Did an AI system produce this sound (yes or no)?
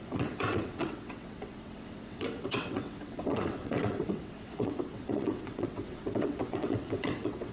yes